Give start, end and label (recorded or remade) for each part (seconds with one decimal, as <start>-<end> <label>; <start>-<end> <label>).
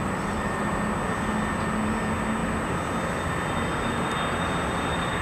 0.0-0.6 remade; 0.6-5.2 recorded